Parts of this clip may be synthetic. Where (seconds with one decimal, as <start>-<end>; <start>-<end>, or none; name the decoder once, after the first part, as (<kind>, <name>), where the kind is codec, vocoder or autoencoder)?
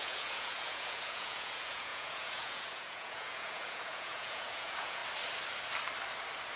0.0-5.0 (vocoder, Vocos)